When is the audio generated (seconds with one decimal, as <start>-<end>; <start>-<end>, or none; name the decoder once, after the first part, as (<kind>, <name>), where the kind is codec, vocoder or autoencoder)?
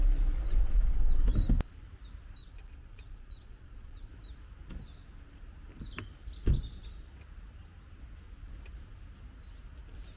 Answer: 2.4-4.1 (vocoder, Vocos)